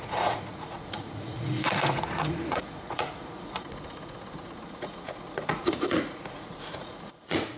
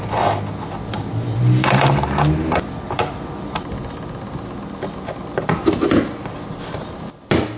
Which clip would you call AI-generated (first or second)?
first